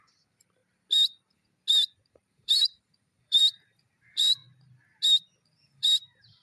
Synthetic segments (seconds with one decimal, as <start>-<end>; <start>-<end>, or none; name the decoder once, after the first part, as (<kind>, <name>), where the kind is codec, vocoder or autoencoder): 0.0-0.6 (vocoder, BigVGAN v2); 2.1-4.4; 5.2-6.4